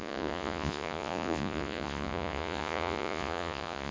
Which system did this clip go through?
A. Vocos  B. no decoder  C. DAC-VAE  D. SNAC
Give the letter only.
A